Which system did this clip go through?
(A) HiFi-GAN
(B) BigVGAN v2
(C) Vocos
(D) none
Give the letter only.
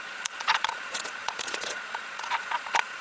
C